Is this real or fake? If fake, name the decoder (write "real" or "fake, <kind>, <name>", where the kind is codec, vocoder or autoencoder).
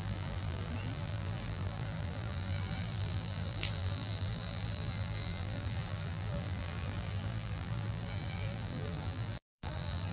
fake, vocoder, BigVGAN v2